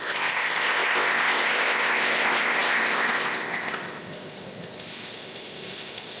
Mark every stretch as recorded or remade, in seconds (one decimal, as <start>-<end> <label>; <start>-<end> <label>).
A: 0.0-6.2 remade